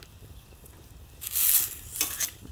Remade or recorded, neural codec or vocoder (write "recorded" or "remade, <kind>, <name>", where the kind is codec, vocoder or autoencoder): recorded